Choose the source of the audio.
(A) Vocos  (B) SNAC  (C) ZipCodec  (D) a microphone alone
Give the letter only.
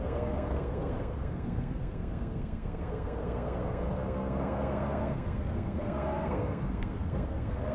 B